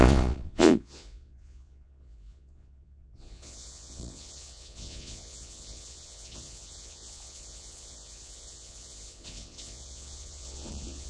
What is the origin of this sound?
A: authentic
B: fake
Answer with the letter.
B